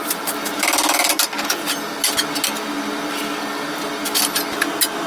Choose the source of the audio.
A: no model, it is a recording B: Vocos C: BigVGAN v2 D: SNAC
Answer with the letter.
A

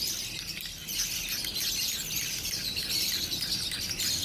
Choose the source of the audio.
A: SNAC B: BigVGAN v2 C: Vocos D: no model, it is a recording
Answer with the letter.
D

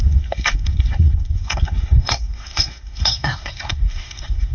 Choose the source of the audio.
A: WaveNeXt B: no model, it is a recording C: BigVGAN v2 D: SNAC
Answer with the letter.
D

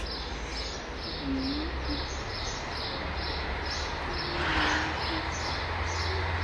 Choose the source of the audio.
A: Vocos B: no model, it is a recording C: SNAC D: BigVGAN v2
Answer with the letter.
B